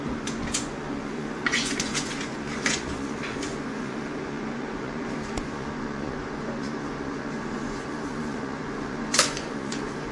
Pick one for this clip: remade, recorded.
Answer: remade